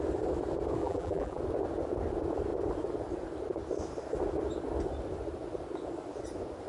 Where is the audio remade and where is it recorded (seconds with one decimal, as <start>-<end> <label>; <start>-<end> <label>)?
0.0-0.8 recorded; 0.8-1.4 remade; 1.4-6.7 recorded